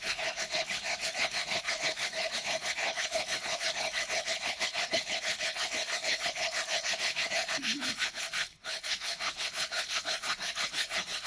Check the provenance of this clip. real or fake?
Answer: fake